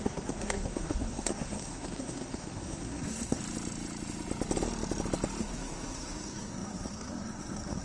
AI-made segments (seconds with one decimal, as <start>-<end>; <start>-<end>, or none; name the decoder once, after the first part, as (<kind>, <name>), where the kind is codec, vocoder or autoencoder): 0.0-3.4 (codec, SNAC); 5.4-7.8